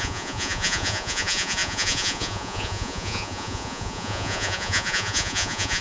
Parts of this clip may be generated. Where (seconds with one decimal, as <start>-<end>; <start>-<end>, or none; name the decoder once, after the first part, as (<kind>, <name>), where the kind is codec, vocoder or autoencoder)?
0.0-5.8 (vocoder, Vocos)

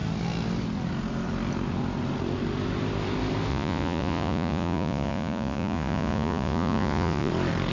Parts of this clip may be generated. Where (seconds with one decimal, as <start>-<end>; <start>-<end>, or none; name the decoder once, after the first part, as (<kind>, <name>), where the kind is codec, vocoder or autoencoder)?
3.5-7.3 (vocoder, Vocos)

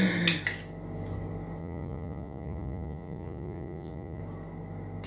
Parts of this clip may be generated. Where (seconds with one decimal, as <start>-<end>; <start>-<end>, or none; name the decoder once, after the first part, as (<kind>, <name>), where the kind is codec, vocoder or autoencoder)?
1.6-4.2 (vocoder, Vocos)

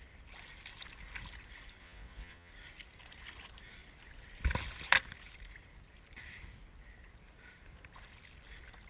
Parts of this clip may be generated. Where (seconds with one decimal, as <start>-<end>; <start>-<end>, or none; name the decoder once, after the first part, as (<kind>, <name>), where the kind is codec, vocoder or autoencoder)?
1.8-2.5 (vocoder, Vocos)

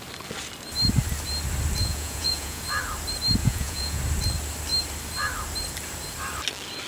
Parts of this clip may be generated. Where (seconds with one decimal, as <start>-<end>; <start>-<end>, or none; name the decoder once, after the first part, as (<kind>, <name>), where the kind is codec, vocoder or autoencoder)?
1.8-2.6 (vocoder, Vocos); 3.4-4.0

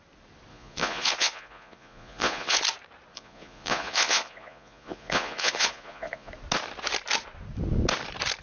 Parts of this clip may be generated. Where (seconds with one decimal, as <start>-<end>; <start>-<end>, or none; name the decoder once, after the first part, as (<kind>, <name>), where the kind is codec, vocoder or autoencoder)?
0.5-2.6 (vocoder, Vocos); 3.1-6.3

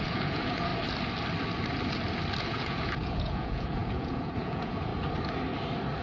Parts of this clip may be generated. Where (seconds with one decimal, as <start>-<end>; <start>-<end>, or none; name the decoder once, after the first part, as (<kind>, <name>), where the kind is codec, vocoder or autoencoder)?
0.0-0.7 (vocoder, Vocos); 2.4-4.9

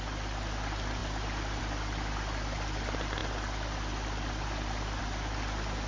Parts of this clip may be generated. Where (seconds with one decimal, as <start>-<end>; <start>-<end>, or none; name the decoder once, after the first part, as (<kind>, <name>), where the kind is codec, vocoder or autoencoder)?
none